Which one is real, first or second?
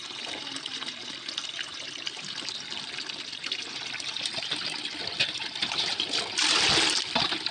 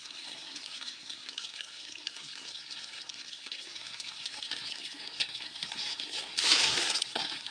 first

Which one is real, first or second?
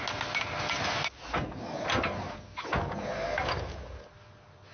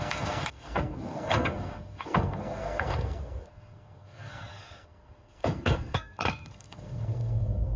first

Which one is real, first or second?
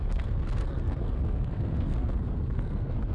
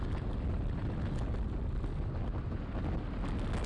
second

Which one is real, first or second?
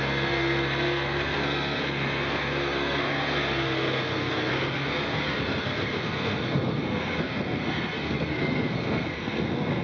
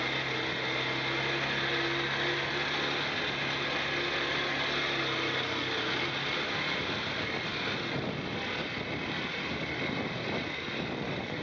second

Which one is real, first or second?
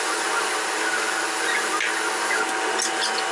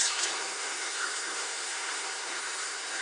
first